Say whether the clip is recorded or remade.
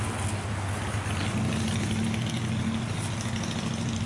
recorded